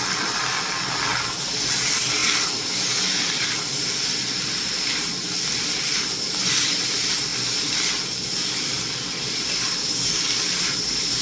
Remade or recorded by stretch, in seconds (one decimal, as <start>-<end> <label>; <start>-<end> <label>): 0.0-11.2 recorded